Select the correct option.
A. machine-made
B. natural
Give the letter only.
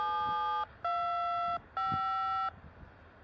B